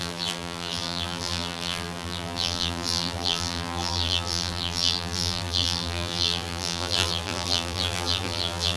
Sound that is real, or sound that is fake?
fake